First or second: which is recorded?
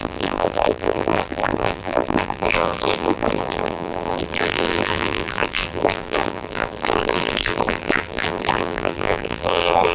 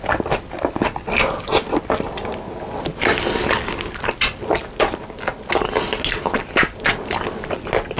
second